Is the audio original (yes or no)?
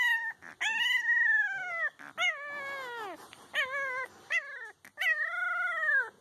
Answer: yes